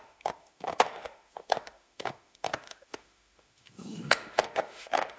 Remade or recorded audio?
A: remade